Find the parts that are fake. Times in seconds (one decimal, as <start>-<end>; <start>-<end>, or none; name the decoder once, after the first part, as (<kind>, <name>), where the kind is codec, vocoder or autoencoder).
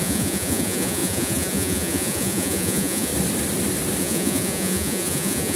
0.0-3.1 (vocoder, Vocos); 4.0-5.6